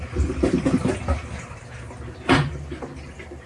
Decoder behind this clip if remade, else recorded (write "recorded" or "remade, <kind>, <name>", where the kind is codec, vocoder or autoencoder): recorded